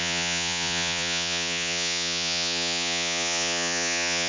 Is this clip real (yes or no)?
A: no